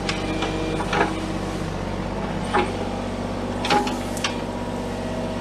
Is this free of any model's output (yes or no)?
yes